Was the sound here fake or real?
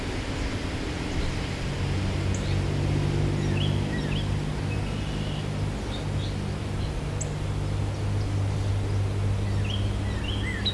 real